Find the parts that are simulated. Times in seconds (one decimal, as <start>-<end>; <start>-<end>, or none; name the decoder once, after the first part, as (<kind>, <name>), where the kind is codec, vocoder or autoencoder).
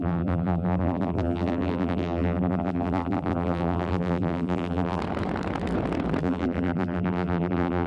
0.0-5.0 (vocoder, BigVGAN v2); 6.2-7.9